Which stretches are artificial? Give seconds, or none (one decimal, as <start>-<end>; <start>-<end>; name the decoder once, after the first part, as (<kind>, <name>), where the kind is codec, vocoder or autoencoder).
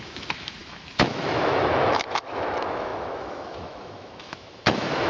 0.0-5.1 (autoencoder, DAC-VAE)